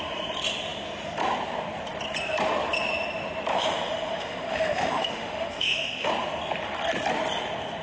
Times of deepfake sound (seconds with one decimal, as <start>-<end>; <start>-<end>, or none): 3.5-6.1